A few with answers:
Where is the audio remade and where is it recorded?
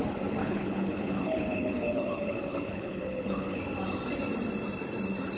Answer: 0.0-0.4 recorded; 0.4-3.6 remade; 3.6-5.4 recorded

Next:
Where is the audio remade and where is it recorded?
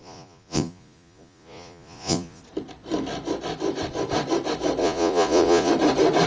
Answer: 0.0-2.4 remade; 2.4-4.8 recorded; 4.8-5.7 remade; 5.7-6.3 recorded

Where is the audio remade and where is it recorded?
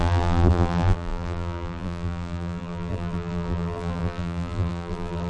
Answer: 0.0-5.3 remade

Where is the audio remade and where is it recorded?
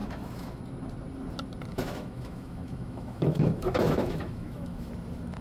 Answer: 0.0-0.6 remade; 0.6-1.7 recorded; 1.7-4.9 remade; 4.9-5.4 recorded